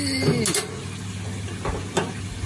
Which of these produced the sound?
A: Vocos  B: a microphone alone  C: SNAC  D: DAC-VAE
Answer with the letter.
B